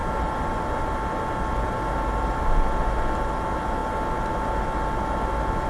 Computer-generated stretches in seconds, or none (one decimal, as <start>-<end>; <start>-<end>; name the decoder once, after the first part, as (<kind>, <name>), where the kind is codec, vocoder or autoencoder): 0.0-0.5 (vocoder, BigVGAN v2); 1.5-2.8